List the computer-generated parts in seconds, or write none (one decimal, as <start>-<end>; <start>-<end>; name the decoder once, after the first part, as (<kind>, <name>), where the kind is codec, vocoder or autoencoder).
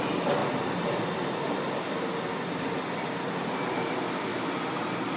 none